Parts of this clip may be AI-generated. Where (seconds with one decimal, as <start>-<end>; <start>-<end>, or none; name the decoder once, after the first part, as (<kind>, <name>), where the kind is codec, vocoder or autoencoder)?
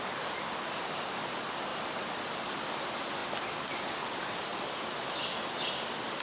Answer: 1.7-2.3 (vocoder, BigVGAN v2); 3.2-3.9